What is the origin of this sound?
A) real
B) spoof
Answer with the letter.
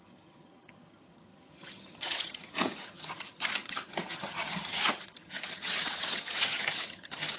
B